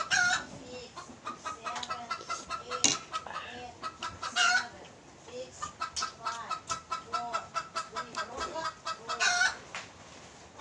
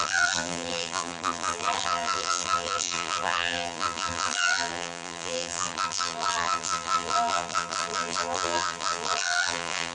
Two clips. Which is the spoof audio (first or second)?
second